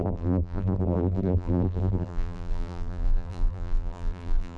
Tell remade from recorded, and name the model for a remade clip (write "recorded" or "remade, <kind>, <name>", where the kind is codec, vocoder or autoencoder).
remade, vocoder, BigVGAN v2